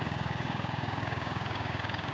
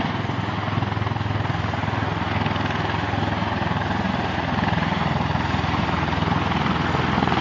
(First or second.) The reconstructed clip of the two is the first